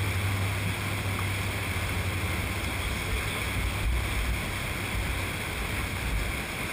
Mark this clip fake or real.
real